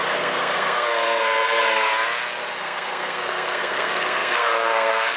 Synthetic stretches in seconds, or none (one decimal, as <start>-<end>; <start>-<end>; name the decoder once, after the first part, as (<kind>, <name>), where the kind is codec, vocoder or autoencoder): 0.0-1.9 (codec, SNAC); 2.6-5.2